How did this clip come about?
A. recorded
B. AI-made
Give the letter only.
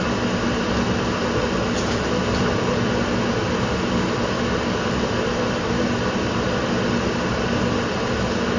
A